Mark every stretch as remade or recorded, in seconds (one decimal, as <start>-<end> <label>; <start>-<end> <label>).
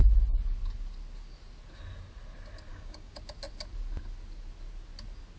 0.0-2.7 recorded; 2.7-3.2 remade; 3.2-5.4 recorded